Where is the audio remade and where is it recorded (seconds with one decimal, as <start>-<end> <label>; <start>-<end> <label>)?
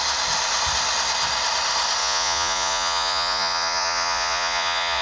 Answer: 0.0-2.0 recorded; 2.0-5.0 remade